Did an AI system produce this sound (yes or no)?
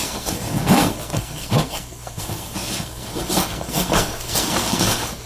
yes